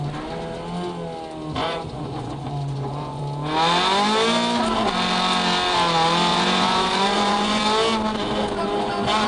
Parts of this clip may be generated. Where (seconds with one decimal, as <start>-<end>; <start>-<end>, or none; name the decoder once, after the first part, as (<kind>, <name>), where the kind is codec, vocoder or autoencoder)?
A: 1.6-3.2 (vocoder, Vocos); 6.3-7.6